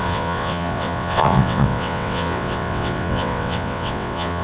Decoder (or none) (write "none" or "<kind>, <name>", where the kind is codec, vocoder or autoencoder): vocoder, WaveNeXt